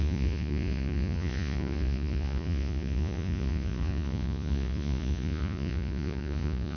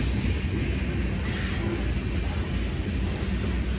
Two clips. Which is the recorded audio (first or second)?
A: second